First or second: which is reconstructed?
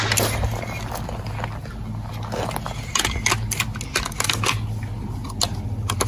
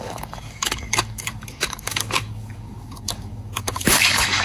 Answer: second